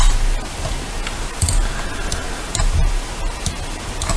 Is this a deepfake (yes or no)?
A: no